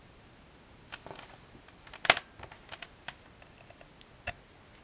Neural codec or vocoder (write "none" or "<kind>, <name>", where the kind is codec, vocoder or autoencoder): none